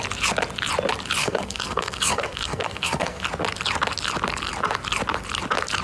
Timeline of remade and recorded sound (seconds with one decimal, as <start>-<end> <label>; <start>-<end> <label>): 0.0-1.2 recorded; 1.2-3.2 remade; 3.2-5.8 recorded